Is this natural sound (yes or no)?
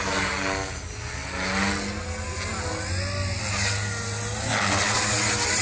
yes